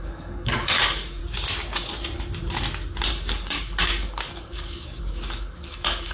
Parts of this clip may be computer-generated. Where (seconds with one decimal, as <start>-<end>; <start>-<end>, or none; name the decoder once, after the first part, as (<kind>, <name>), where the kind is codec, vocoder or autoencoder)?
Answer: 0.0-1.2 (codec, DAC); 3.1-6.1